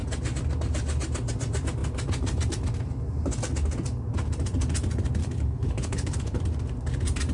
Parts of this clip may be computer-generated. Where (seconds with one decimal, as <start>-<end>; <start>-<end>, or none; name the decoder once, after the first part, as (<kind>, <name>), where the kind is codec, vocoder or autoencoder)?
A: 5.2-6.4 (codec, HILCodec)